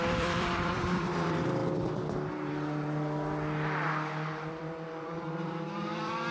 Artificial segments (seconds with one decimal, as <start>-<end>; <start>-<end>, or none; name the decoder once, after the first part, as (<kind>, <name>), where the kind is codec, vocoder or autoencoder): 0.0-1.6 (vocoder, BigVGAN v2); 4.5-6.3